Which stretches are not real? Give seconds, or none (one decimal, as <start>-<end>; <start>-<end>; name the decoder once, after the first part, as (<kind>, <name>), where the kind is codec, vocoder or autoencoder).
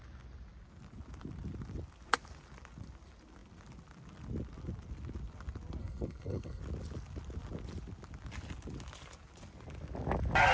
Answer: 5.8-6.6 (codec, SNAC)